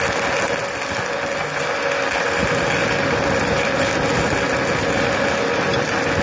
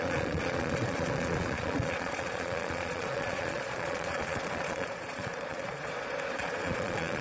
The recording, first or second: first